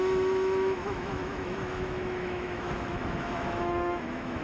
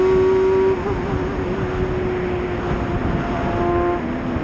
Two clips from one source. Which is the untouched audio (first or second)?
second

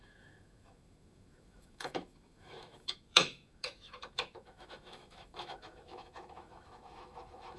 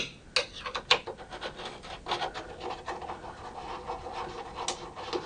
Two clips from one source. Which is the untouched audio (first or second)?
second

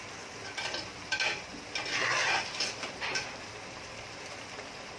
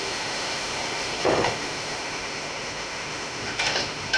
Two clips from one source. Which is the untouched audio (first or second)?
first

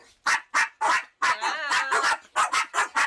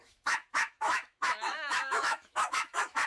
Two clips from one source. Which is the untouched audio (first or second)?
first